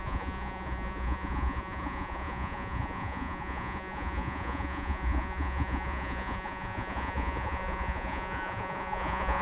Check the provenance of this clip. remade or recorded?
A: remade